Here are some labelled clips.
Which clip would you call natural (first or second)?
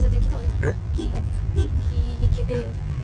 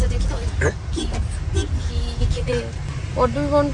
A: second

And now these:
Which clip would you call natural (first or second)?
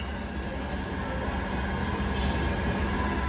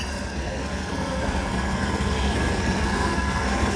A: first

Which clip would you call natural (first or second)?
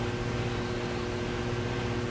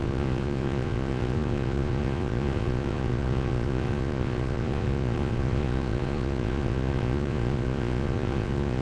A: first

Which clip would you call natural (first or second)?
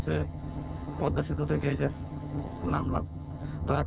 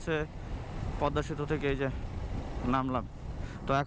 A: second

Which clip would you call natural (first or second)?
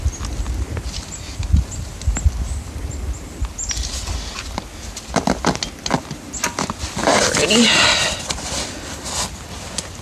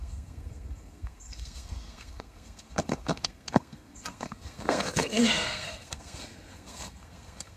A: first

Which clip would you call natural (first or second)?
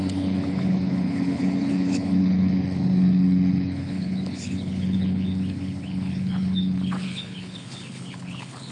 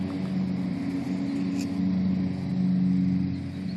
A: second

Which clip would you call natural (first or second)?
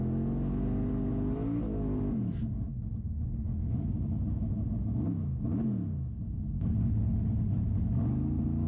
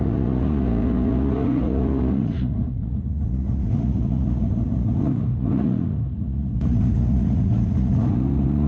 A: first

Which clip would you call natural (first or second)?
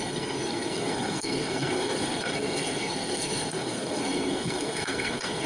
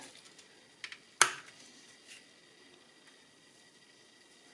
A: second